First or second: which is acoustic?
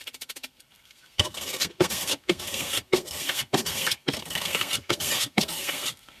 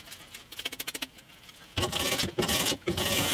second